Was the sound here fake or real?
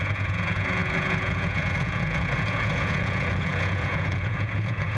fake